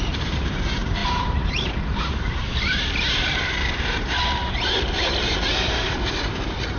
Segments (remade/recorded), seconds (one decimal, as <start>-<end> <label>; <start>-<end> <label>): 0.0-6.8 remade